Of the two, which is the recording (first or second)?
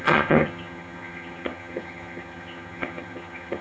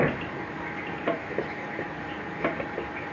second